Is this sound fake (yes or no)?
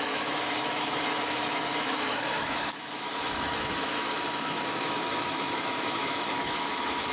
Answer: yes